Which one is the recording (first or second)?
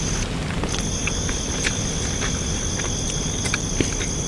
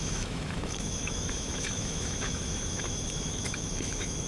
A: first